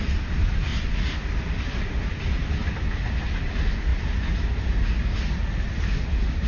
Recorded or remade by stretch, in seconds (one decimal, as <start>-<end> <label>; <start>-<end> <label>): 0.0-6.5 recorded